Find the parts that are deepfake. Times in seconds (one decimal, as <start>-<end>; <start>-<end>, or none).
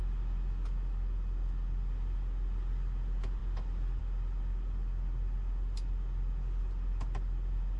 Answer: none